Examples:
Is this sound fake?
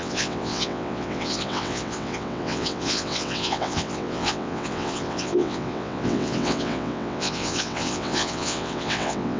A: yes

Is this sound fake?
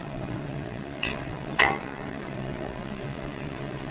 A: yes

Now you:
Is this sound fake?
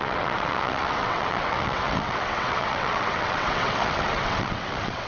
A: yes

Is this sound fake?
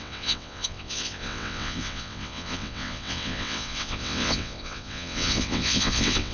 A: yes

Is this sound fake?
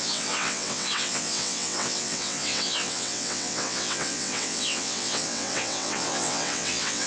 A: yes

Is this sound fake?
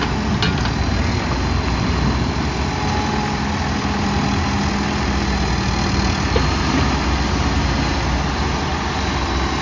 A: no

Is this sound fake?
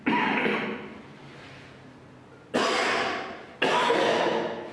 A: no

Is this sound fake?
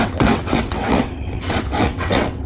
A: yes